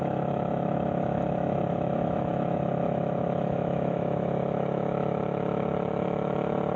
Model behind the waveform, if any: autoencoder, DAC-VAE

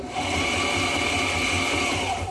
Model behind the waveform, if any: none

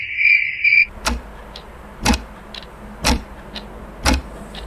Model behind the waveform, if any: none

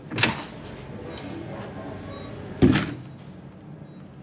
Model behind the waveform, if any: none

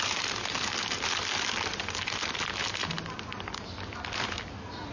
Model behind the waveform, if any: none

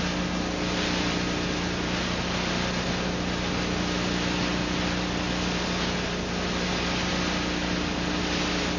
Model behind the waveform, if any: none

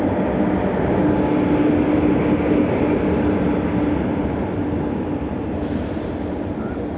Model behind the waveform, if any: none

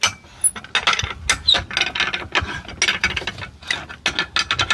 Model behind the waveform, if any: none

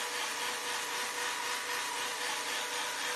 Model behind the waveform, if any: none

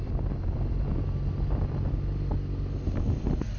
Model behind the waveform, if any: none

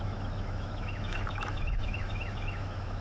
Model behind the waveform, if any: autoencoder, DAC-VAE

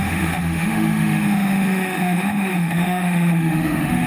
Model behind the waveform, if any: autoencoder, DAC-VAE